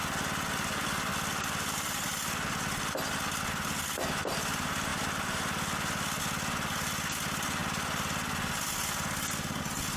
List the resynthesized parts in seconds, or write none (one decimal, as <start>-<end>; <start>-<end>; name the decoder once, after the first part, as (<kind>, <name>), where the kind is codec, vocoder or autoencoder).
none